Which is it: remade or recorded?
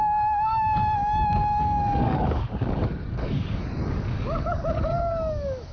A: remade